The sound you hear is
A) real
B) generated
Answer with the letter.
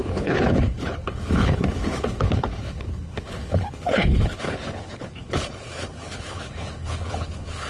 B